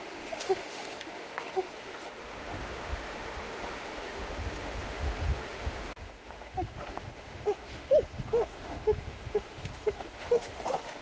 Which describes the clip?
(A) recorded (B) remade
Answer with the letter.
B